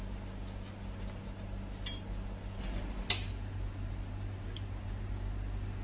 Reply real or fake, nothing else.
real